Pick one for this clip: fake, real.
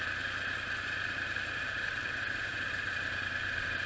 real